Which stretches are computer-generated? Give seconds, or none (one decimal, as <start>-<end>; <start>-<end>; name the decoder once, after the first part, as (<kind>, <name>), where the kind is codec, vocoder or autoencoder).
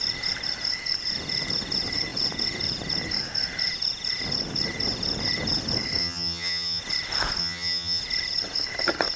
6.0-6.8 (vocoder, HiFi-GAN); 7.4-8.0